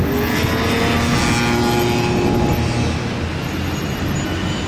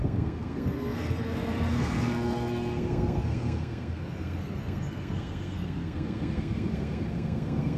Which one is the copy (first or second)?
second